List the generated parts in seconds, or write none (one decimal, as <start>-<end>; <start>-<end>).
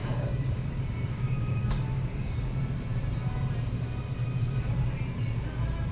0.0-2.5